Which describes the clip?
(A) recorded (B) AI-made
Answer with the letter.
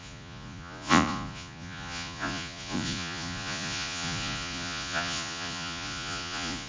B